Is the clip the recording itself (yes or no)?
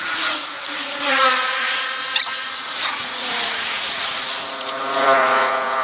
no